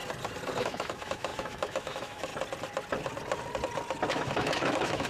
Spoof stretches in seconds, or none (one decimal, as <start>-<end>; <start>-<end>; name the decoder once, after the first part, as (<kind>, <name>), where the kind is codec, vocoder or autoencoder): 0.6-2.3 (autoencoder, DAC-VAE); 4.1-5.1